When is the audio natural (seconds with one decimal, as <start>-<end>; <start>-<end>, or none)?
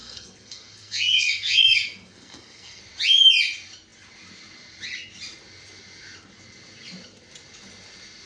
2.8-8.3